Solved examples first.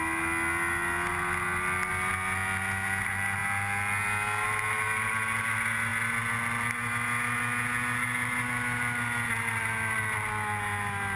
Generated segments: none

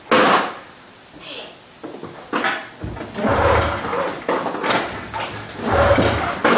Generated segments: none

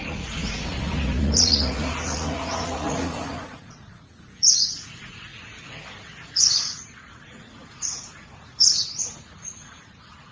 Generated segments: 0.0-5.3 (vocoder, Vocos); 6.0-10.3

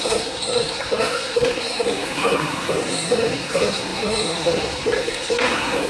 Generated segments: 0.0-5.9 (codec, SNAC)

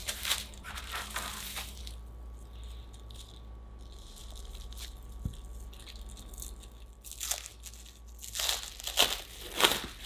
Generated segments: 0.0-1.8 (vocoder, BigVGAN v2)

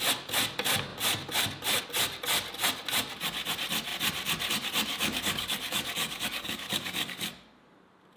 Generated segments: 4.9-7.3 (codec, DAC)

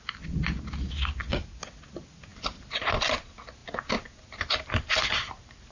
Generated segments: 1.2-1.9 (vocoder, Vocos)